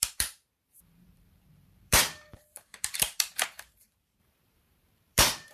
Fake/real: fake